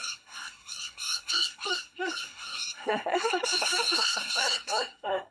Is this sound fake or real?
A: fake